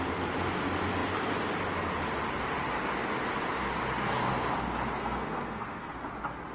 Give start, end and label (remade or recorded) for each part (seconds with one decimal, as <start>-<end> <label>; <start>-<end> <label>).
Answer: 0.0-5.0 recorded; 5.0-6.1 remade; 6.1-6.5 recorded